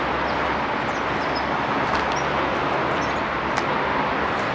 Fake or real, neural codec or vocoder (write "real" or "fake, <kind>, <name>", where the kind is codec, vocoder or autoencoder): real